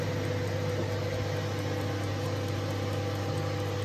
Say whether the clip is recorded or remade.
recorded